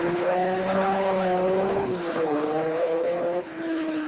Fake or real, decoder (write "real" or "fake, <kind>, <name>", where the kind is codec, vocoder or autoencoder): fake, codec, HILCodec